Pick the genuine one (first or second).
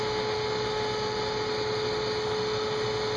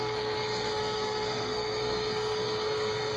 first